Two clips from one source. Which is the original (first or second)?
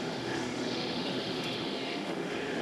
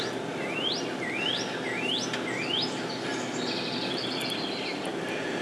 second